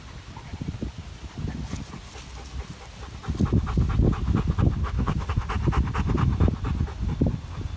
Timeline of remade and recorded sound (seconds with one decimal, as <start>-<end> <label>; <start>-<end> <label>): 0.0-4.8 recorded; 4.8-5.3 remade; 5.3-7.8 recorded